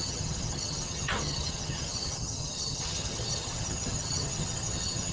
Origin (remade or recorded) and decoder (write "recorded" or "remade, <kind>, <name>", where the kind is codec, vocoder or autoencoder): remade, vocoder, HiFi-GAN